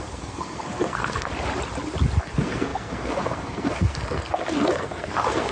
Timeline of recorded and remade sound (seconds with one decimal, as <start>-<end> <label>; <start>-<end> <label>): 0.0-1.3 remade; 1.3-2.2 recorded; 2.2-5.5 remade